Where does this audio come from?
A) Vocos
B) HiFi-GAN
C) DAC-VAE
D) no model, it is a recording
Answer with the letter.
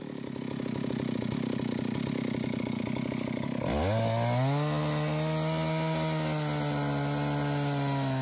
D